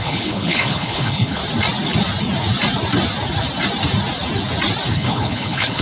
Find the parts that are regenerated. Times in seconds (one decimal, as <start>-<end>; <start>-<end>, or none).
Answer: 0.0-1.4; 4.9-5.8